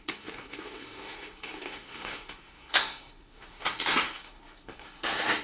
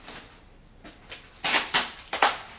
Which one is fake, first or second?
first